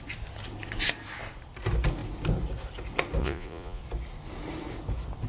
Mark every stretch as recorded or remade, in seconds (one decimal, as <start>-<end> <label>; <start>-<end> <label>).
0.0-3.2 recorded; 3.2-3.8 remade; 3.8-5.3 recorded